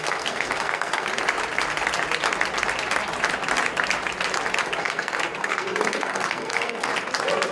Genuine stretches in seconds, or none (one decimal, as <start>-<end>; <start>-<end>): 1.1-4.8; 6.9-7.5